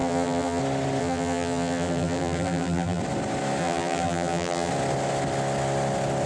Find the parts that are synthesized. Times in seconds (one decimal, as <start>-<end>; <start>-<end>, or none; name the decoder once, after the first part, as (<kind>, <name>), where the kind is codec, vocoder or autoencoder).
0.0-0.6 (vocoder, BigVGAN v2); 1.0-3.0; 3.6-4.7